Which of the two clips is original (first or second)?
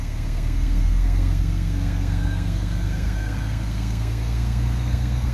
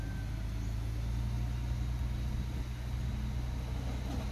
second